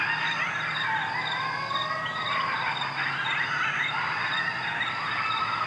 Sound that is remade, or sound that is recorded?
recorded